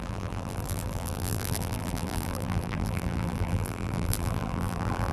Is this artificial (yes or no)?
yes